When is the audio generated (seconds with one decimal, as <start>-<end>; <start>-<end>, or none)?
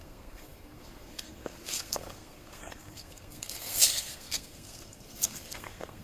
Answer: 0.0-6.0